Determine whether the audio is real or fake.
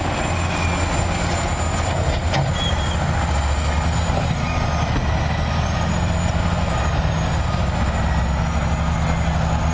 real